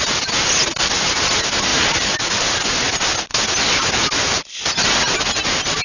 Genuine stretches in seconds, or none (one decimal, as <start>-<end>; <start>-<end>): 0.0-5.8

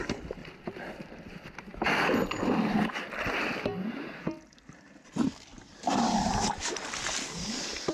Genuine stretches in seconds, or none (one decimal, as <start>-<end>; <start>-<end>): 0.0-0.4; 1.0-7.9

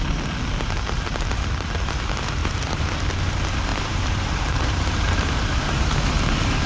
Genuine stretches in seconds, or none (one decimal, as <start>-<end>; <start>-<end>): 0.0-2.4; 3.0-3.7; 5.7-6.7

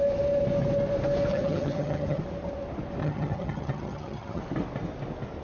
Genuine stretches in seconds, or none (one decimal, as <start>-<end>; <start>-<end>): 0.0-1.3; 2.2-3.0; 4.4-5.4

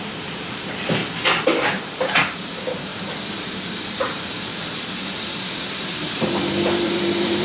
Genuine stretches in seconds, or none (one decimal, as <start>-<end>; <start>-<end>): 1.0-1.7; 2.9-3.5; 4.5-5.4

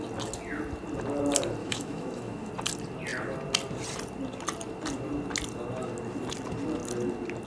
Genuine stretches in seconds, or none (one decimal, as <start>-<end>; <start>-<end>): 0.0-1.6; 2.5-7.5